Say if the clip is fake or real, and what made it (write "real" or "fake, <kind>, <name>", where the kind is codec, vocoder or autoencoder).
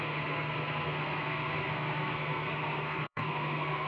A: fake, codec, SNAC